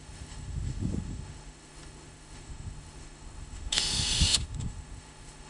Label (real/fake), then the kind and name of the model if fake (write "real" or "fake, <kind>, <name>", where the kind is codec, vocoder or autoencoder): fake, autoencoder, DAC-VAE